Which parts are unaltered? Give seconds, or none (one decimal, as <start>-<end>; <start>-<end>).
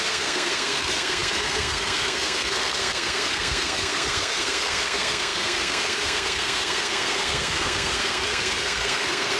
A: none